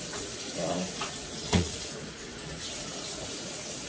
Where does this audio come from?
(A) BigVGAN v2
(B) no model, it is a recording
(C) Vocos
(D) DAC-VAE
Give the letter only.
C